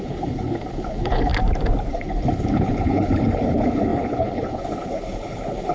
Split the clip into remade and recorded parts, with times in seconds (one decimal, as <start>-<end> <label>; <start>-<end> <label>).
0.0-1.3 remade; 1.3-1.9 recorded; 1.9-5.7 remade